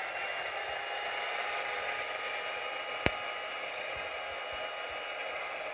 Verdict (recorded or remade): recorded